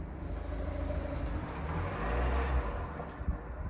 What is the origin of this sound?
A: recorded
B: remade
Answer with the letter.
A